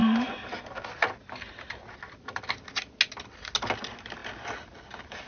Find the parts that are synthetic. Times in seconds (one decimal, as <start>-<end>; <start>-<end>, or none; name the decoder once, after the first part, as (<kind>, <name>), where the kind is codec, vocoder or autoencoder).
none